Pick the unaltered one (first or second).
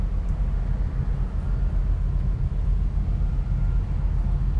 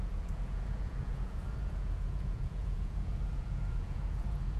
first